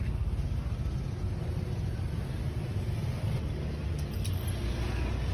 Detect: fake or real real